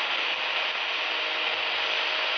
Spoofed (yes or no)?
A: no